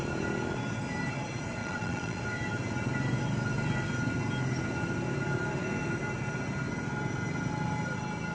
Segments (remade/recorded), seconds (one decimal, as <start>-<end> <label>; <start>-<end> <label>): 0.0-1.6 recorded; 1.6-2.2 remade; 2.2-8.3 recorded